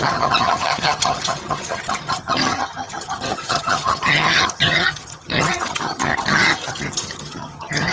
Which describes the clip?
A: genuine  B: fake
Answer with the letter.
B